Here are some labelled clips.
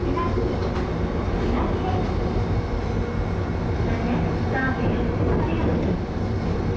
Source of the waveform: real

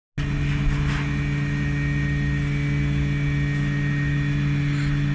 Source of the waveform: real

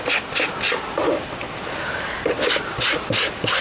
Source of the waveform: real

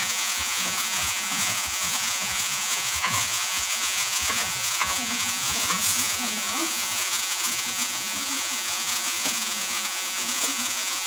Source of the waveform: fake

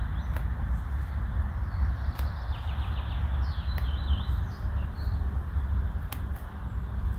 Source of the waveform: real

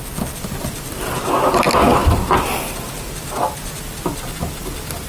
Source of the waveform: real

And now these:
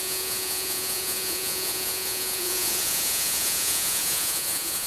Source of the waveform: fake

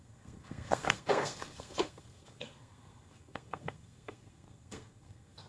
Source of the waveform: fake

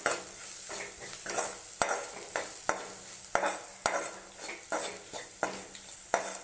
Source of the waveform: real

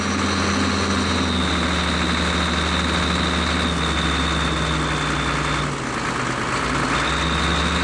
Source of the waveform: real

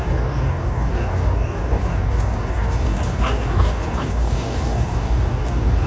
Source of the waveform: fake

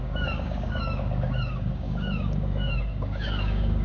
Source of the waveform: fake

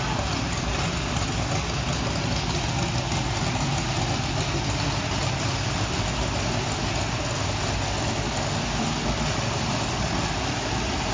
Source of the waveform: real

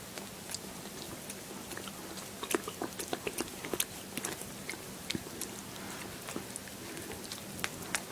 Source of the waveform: real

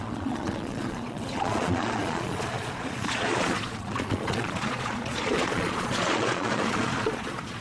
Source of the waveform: fake